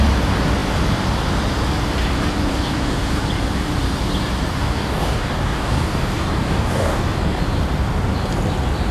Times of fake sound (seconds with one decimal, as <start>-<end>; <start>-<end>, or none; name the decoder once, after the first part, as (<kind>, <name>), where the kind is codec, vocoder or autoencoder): 2.5-3.2 (codec, DAC); 4.5-7.4